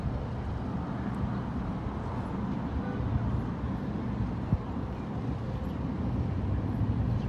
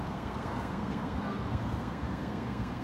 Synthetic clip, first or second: second